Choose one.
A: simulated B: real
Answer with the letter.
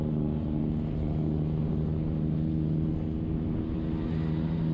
B